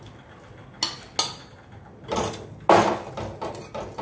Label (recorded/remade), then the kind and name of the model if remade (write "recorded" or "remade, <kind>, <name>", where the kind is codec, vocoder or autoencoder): recorded